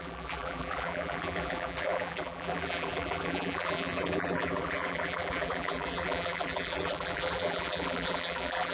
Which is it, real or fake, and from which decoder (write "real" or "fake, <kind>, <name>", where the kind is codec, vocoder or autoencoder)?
fake, vocoder, BigVGAN v2